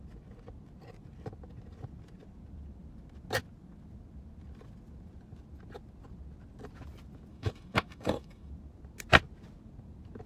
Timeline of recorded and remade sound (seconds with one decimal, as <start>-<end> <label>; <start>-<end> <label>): 0.0-7.3 recorded; 7.3-8.5 remade; 8.5-10.3 recorded